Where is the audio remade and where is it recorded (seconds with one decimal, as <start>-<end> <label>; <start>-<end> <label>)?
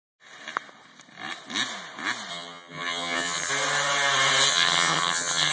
0.0-2.3 recorded; 2.3-3.5 remade; 3.5-4.5 recorded; 4.5-5.5 remade